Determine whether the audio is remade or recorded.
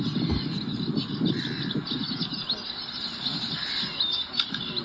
recorded